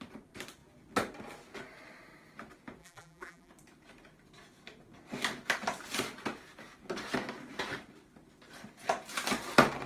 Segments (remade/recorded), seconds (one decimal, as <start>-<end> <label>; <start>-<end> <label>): 0.0-2.8 recorded; 2.8-3.5 remade; 3.5-9.9 recorded